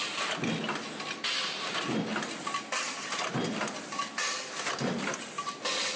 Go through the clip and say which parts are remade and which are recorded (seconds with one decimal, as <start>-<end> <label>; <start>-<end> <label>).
0.0-6.0 recorded